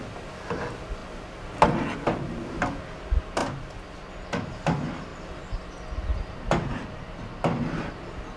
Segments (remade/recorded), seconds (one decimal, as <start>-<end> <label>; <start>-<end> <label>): 0.0-6.1 recorded; 6.1-7.2 remade; 7.2-8.4 recorded